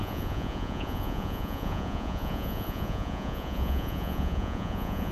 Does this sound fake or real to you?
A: fake